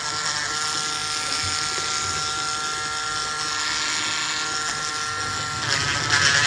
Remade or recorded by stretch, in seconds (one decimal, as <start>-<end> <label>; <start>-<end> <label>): 0.0-6.5 recorded